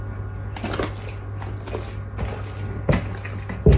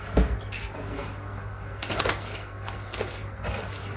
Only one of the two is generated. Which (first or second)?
second